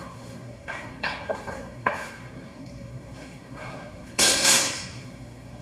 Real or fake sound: fake